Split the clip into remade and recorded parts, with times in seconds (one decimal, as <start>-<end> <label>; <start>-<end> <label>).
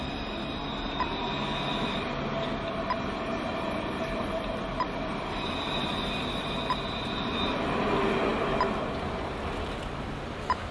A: 0.0-10.7 recorded